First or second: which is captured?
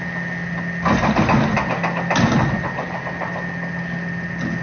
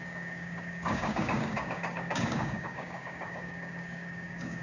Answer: first